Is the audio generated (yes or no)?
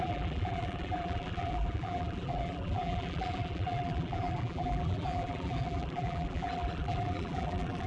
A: yes